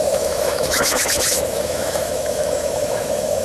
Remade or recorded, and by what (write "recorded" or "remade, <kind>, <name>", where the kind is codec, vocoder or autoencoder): remade, autoencoder, DAC-VAE